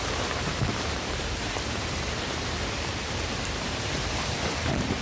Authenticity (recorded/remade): remade